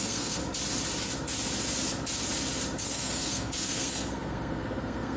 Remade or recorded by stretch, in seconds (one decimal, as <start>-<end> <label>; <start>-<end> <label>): 0.0-0.4 remade; 0.4-2.8 recorded; 2.8-5.2 remade